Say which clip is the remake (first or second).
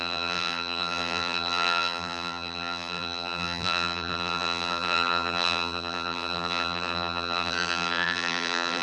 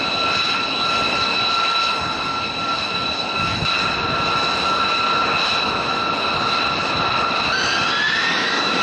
first